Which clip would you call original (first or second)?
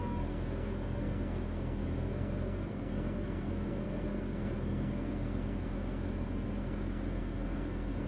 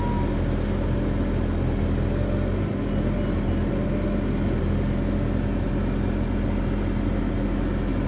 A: second